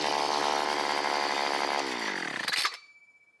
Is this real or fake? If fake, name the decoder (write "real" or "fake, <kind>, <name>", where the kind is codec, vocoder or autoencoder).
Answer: fake, vocoder, BigVGAN v2